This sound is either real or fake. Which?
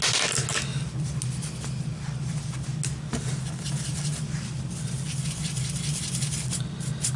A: real